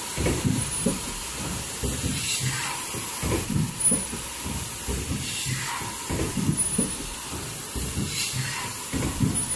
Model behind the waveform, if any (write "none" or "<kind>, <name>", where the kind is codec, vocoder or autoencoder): none